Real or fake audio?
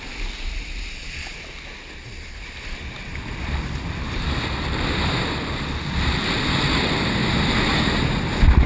real